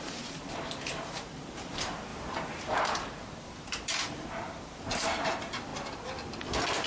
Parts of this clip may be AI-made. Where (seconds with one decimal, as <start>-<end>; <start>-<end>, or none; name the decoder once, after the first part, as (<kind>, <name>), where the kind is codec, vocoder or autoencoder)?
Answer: 0.0-5.7 (vocoder, BigVGAN v2)